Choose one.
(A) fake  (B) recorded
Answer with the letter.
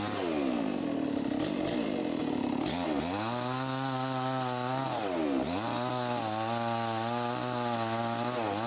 B